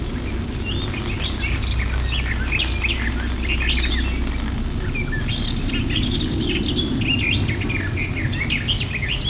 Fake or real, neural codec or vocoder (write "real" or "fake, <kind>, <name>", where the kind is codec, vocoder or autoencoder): real